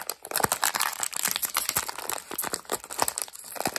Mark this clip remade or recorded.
recorded